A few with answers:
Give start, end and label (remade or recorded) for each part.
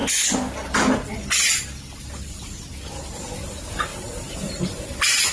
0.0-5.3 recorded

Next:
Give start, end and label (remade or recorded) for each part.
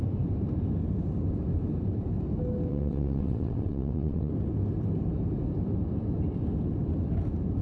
0.0-2.7 recorded; 2.7-4.3 remade; 4.3-7.6 recorded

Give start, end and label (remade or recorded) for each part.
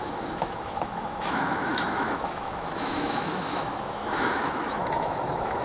0.0-5.6 remade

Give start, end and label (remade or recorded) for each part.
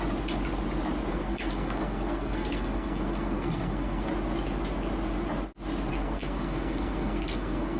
0.0-1.1 recorded; 1.1-4.1 remade; 4.1-5.9 recorded; 5.9-7.8 remade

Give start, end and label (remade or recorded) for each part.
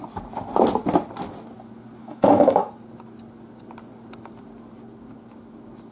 0.0-2.0 recorded; 2.0-2.7 remade; 2.7-5.9 recorded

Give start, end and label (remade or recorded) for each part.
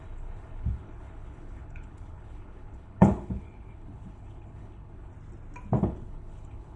0.0-5.1 remade; 5.1-5.8 recorded; 5.8-6.8 remade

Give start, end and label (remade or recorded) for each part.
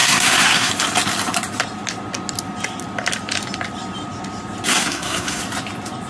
0.0-0.7 remade; 0.7-4.7 recorded; 4.7-5.4 remade; 5.4-6.1 recorded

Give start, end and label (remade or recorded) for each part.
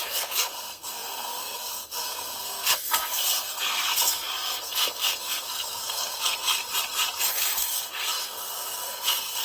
0.0-6.6 remade; 6.6-7.2 recorded; 7.2-9.4 remade